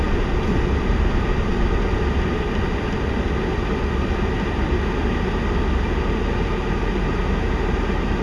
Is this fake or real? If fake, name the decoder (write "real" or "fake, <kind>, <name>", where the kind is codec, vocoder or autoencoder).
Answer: real